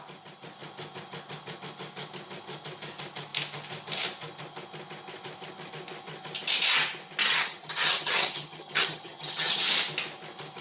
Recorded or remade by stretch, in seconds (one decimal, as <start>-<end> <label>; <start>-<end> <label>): 0.0-7.2 recorded; 7.2-9.6 remade; 9.6-10.6 recorded